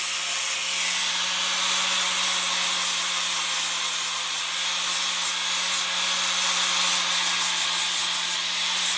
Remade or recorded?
recorded